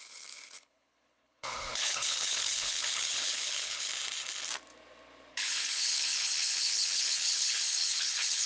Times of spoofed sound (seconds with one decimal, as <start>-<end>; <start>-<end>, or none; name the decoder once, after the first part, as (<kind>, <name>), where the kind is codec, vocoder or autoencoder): 0.0-3.9 (codec, HILCodec); 5.3-8.5